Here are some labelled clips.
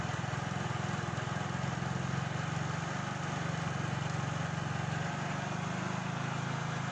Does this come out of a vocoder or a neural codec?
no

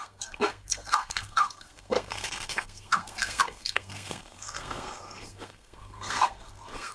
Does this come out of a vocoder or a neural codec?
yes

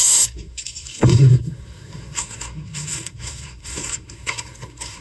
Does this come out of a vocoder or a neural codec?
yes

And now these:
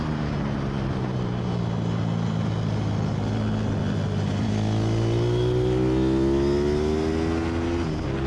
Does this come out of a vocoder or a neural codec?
no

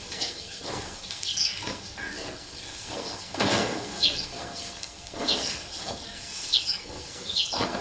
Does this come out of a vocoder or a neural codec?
yes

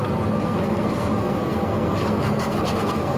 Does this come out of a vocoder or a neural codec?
yes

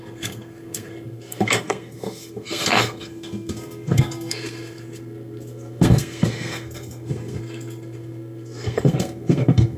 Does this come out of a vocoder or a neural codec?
yes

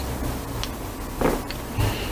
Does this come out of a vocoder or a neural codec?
no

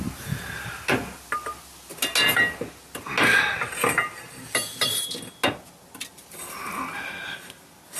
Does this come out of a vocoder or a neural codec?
no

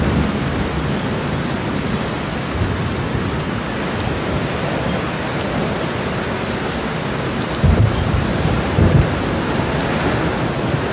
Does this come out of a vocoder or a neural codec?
no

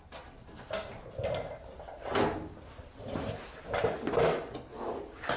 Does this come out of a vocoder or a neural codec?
no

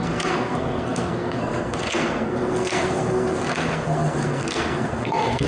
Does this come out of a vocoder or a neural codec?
yes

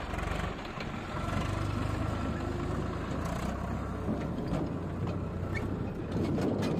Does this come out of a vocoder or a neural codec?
no